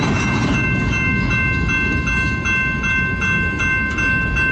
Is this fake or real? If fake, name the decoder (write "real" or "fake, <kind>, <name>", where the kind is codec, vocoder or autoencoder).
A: real